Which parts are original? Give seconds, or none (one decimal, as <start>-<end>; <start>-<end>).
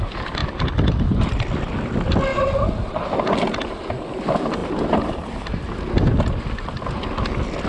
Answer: 0.0-2.3; 2.9-7.7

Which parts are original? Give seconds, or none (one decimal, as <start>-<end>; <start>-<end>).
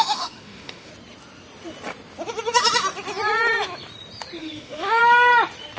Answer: 0.9-4.4; 5.0-5.8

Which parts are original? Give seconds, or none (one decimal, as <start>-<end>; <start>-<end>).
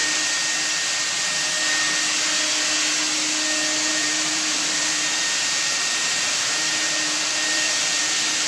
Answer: 0.0-3.9